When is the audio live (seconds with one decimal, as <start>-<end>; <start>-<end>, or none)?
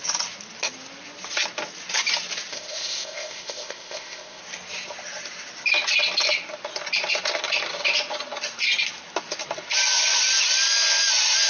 0.0-2.5; 4.4-11.5